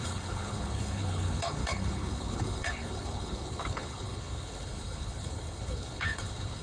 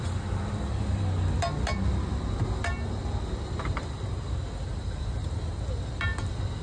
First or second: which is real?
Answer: second